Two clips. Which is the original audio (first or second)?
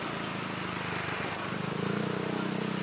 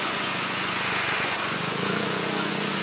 first